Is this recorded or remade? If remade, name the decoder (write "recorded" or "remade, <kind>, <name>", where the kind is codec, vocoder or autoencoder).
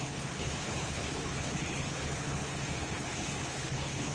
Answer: remade, codec, HILCodec